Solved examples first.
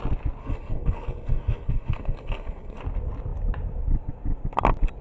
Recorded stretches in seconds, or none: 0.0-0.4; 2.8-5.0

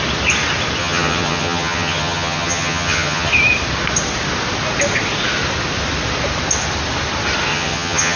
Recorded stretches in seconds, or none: 0.0-0.8; 3.3-7.5

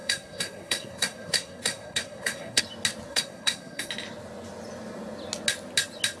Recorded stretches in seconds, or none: 2.6-3.1; 3.9-6.2

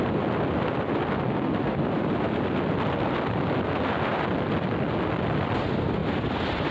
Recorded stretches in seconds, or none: 0.0-6.7

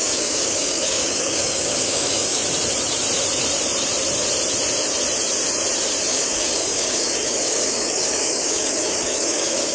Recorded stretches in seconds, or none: 2.4-6.1

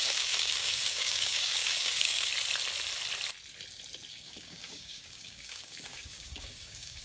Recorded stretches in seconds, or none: 2.3-4.1